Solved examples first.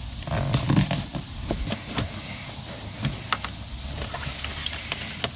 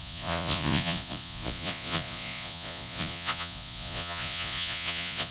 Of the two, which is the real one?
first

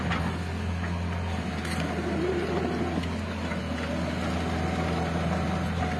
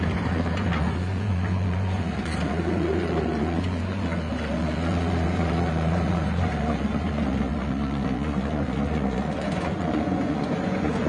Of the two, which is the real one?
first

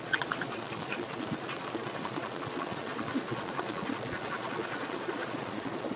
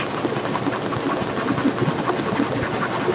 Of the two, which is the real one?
second